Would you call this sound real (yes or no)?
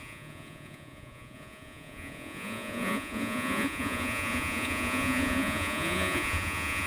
no